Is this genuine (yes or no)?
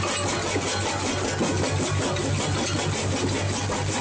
yes